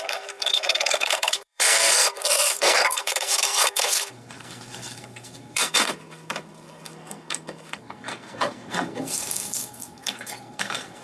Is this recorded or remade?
remade